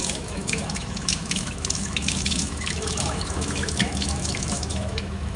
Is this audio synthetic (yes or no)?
yes